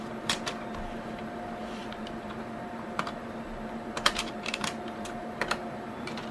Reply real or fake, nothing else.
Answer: fake